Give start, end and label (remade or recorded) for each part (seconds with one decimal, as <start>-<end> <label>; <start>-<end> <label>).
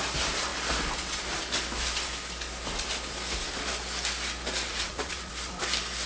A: 0.0-4.7 recorded; 4.7-5.3 remade; 5.3-6.1 recorded